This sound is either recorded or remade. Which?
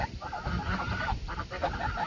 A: recorded